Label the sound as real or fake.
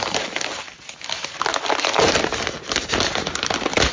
real